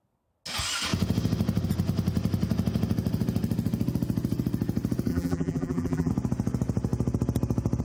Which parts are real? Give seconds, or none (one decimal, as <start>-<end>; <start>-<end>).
0.0-5.1; 6.1-7.8